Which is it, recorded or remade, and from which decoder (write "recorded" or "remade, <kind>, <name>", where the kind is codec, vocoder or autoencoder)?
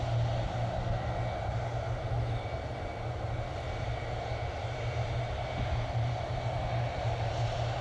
recorded